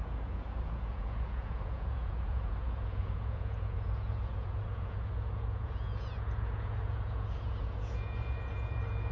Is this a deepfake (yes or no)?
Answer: yes